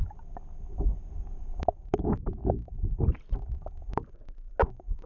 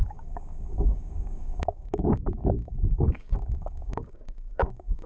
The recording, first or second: first